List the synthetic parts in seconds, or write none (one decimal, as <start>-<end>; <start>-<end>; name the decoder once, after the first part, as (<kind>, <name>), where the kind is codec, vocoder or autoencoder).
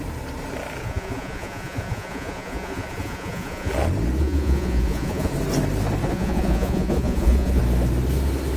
0.8-3.7 (vocoder, Vocos); 4.2-5.3; 6.0-7.6